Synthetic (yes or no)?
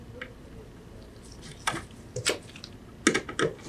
no